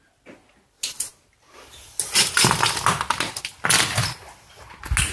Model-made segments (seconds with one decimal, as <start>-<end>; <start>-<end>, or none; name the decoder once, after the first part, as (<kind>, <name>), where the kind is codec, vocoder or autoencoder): none